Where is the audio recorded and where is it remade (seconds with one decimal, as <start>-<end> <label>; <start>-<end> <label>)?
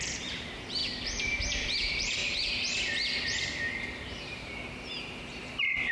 0.0-2.2 remade; 2.2-3.8 recorded; 3.8-5.9 remade